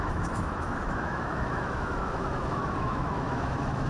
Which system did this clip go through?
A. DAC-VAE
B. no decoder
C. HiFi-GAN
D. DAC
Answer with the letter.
A